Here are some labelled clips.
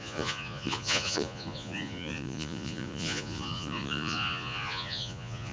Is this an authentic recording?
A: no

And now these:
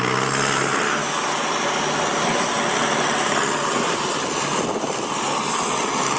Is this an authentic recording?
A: yes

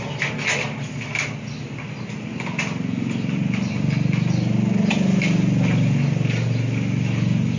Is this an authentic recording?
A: yes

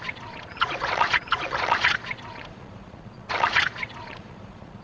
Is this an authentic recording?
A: no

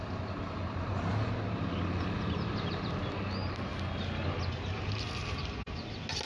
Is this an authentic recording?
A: yes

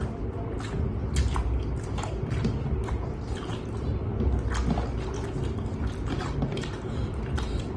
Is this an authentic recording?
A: yes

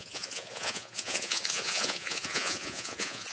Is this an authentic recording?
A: no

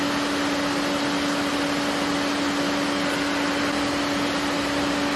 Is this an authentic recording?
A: yes